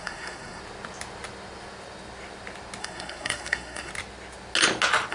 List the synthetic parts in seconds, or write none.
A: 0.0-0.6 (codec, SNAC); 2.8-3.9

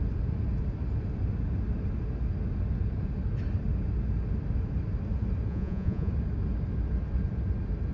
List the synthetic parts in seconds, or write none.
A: 5.5-6.1 (vocoder, Vocos)

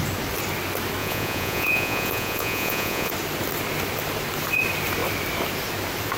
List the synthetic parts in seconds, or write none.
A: 1.0-3.1 (vocoder, Vocos)

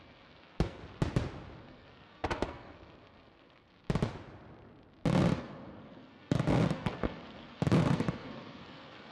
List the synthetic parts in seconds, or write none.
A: 0.0-0.8 (codec, SNAC); 1.6-3.7; 5.4-9.1

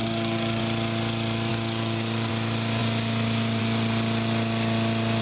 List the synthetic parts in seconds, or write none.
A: 0.0-0.6 (codec, DAC); 1.5-2.3